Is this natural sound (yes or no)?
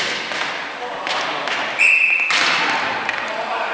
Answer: no